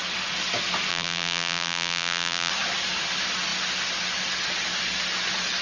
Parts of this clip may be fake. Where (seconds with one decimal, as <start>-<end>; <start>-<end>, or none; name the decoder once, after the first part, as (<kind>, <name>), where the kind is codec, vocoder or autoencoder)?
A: 0.9-2.5 (vocoder, BigVGAN v2)